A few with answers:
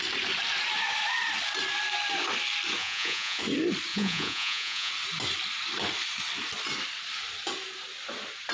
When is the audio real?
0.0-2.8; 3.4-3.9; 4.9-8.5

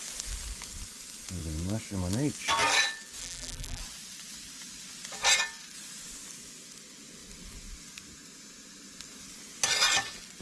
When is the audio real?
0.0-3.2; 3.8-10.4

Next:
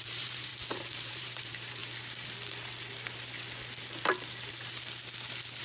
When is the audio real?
0.5-1.1; 1.8-5.6

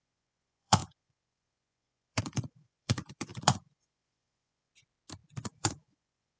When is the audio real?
4.7-5.4

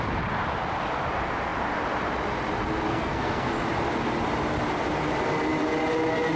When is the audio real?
0.0-2.9; 3.5-6.4